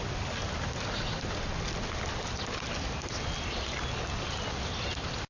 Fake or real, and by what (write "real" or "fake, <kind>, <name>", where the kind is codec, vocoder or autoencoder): real